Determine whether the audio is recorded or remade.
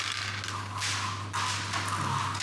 recorded